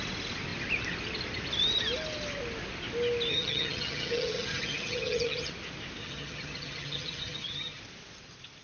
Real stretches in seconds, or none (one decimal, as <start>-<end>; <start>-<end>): 0.0-3.3; 5.5-6.0; 7.8-8.6